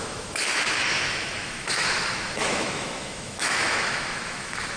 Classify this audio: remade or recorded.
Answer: remade